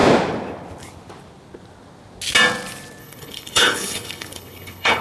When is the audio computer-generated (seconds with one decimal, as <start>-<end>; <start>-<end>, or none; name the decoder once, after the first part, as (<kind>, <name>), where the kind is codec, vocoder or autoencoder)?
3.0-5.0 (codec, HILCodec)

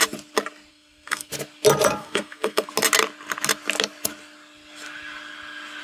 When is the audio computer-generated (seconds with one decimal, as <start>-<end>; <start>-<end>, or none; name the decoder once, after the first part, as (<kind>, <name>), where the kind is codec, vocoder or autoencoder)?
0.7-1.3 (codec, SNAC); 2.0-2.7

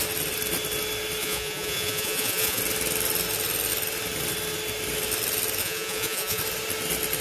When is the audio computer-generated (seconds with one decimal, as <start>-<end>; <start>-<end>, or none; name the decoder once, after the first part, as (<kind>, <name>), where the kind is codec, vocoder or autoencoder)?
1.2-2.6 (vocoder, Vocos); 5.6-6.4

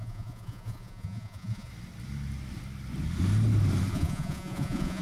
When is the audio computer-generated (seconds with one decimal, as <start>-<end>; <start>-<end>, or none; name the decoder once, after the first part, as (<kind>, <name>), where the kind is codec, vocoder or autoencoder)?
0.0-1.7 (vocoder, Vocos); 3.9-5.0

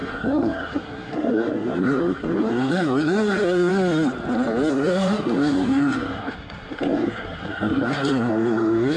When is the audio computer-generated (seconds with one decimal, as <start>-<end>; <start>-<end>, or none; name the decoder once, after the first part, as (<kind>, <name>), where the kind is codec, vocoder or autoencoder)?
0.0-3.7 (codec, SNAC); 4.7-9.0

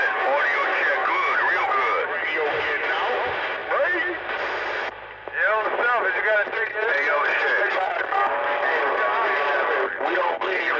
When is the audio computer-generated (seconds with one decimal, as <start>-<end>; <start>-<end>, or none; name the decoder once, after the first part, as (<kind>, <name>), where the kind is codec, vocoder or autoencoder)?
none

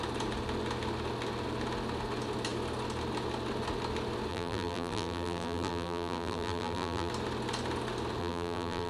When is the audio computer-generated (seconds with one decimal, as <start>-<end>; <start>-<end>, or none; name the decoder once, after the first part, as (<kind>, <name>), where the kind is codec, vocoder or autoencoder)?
4.3-7.1 (vocoder, BigVGAN v2); 8.2-8.9

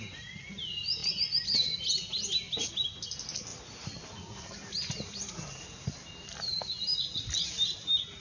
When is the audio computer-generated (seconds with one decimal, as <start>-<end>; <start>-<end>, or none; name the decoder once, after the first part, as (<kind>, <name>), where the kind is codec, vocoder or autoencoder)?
none